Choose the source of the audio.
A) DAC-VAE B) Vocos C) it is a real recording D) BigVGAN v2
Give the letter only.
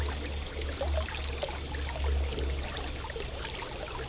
C